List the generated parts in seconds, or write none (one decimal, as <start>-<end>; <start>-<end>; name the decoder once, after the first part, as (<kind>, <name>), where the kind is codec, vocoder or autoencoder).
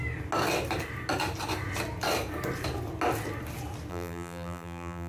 3.9-5.1 (vocoder, BigVGAN v2)